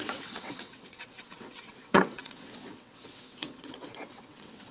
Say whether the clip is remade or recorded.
remade